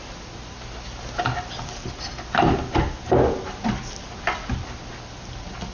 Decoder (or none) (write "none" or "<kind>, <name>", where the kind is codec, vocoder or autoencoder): none